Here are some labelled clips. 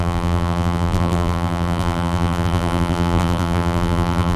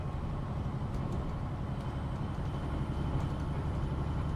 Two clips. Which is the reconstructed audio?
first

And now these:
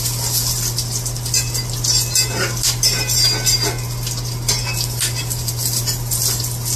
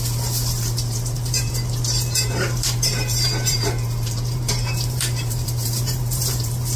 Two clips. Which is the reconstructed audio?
second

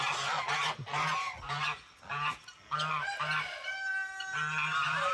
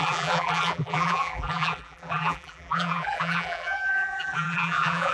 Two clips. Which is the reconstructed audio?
second